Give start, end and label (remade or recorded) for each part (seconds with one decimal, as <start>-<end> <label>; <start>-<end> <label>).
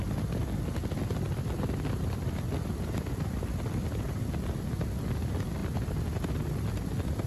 0.0-7.3 recorded